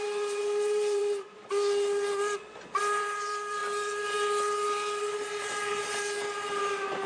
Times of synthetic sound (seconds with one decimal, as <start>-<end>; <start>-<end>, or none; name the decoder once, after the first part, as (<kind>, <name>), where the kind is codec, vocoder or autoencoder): 0.0-1.0 (vocoder, BigVGAN v2); 2.8-3.6; 6.3-7.1